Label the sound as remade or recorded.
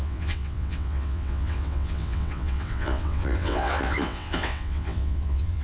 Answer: remade